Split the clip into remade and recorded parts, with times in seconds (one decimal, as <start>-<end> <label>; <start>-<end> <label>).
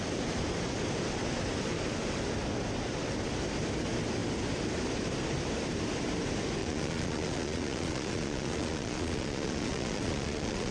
0.0-6.6 recorded; 6.6-10.7 remade